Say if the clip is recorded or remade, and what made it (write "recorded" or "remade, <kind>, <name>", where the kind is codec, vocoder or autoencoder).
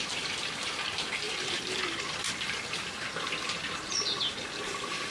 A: recorded